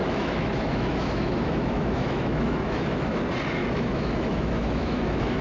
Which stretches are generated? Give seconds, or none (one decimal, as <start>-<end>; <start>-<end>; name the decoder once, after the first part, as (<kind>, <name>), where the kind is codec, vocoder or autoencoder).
0.0-3.2 (autoencoder, DAC-VAE); 3.6-5.4

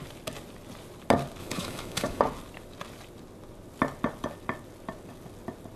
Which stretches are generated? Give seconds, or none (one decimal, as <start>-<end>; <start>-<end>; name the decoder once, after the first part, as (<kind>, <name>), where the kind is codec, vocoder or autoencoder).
1.4-2.2 (autoencoder, DAC-VAE)

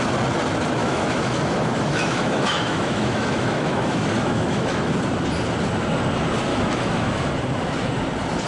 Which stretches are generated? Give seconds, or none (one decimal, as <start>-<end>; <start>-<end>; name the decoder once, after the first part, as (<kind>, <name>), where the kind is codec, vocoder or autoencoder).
0.8-4.9 (autoencoder, DAC-VAE); 6.5-7.2

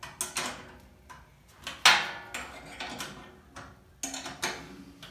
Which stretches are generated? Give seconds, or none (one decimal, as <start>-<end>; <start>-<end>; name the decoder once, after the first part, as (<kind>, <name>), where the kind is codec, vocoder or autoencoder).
none

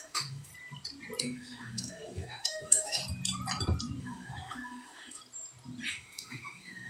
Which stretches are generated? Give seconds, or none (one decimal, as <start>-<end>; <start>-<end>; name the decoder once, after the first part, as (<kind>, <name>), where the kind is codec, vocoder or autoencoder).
0.0-0.5 (autoencoder, DAC-VAE); 1.2-3.0; 4.0-5.2; 5.9-6.9

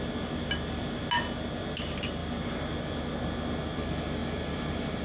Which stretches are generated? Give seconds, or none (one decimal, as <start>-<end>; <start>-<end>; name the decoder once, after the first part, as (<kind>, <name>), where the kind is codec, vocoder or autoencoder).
none

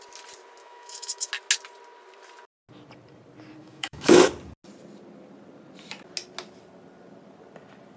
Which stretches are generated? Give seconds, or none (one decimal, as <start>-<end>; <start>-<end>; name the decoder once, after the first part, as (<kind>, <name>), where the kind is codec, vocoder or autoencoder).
0.6-1.3 (autoencoder, DAC-VAE); 3.6-4.3